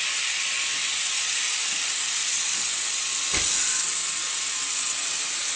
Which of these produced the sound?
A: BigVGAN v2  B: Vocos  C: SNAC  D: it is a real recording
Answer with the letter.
D